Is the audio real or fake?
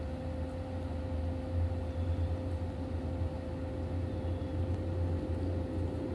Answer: real